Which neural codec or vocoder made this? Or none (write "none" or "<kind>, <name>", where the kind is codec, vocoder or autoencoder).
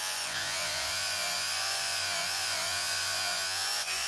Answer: vocoder, Vocos